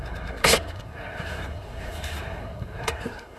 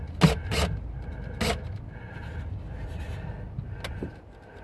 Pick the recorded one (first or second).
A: second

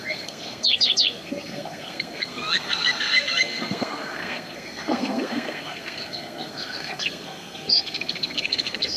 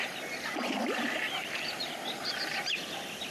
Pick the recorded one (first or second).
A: second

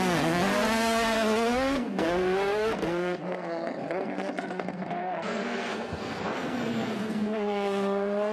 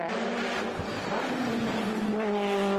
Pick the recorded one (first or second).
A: second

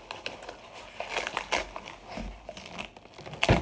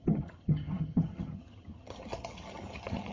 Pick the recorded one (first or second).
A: first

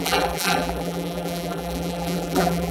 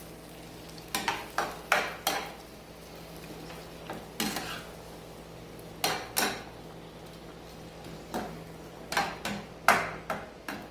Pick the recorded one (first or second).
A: second